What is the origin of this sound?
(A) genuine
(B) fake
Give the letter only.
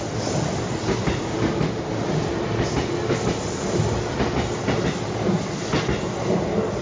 A